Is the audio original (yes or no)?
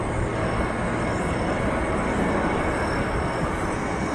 yes